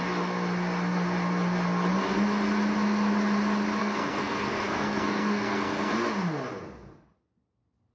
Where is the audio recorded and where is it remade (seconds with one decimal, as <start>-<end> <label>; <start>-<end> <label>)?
0.0-3.8 recorded; 3.8-5.9 remade; 5.9-7.9 recorded